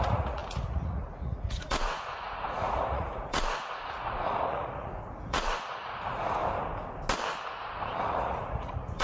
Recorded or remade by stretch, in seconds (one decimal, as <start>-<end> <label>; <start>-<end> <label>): 0.0-6.4 remade; 6.4-8.0 recorded; 8.0-9.0 remade